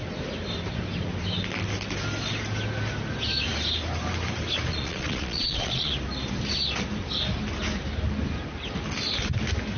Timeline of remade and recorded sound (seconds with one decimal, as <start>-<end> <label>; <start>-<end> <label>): 0.0-4.7 recorded; 4.7-5.9 remade; 5.9-9.8 recorded